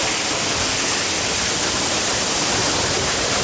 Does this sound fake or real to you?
fake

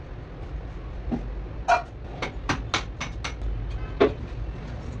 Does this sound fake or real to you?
real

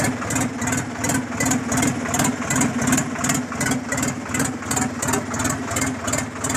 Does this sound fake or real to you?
real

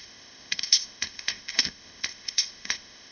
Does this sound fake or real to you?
fake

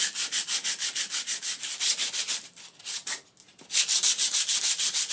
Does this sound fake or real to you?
real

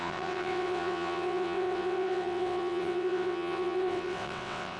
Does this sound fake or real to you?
fake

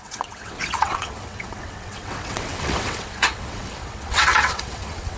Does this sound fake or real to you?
fake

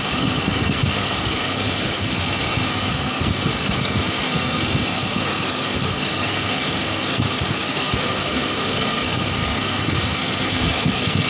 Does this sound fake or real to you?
fake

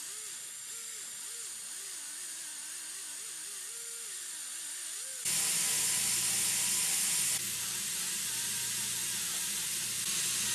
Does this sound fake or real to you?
real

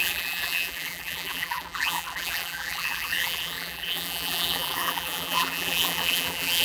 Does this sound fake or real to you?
fake